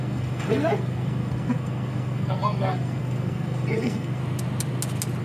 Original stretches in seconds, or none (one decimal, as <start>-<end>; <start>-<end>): 4.2-5.2